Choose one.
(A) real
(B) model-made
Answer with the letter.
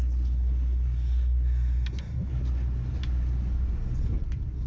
A